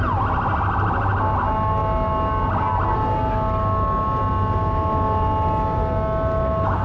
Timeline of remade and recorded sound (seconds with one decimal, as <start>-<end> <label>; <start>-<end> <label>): 0.0-6.8 recorded